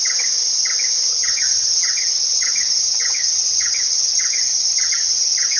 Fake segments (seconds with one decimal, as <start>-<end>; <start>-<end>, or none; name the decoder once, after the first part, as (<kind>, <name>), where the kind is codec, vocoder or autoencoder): 1.1-5.6 (vocoder, HiFi-GAN)